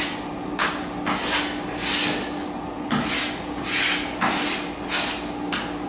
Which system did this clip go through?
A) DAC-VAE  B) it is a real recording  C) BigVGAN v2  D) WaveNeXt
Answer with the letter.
B